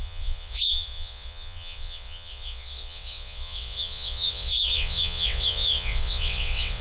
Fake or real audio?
fake